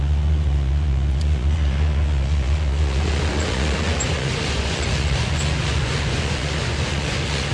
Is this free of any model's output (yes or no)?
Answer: no